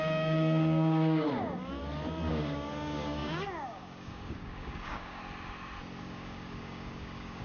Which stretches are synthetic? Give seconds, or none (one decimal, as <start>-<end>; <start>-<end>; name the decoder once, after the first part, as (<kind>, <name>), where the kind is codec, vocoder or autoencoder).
0.0-1.8 (codec, DAC); 2.3-5.2; 6.0-7.4

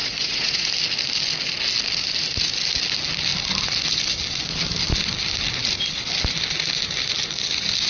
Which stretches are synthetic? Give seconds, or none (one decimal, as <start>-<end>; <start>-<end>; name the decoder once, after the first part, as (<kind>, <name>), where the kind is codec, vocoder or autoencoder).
0.0-0.7 (vocoder, Vocos)